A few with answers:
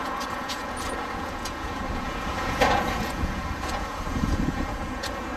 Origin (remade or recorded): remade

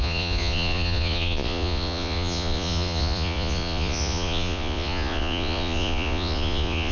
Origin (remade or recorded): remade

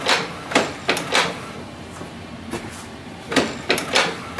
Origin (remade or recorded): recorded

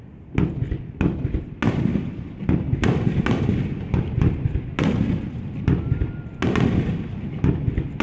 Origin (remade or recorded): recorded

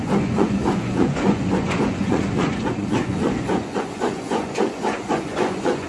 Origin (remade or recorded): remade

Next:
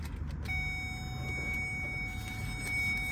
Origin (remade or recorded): recorded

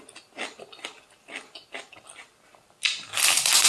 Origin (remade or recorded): recorded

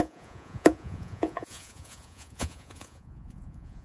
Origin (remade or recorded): remade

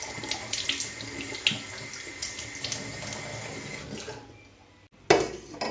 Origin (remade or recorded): recorded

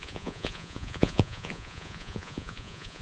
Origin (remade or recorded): remade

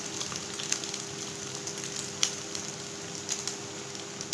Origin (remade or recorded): recorded